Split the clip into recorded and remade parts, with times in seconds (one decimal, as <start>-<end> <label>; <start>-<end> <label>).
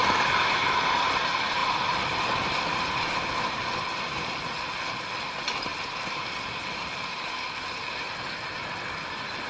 0.0-9.5 recorded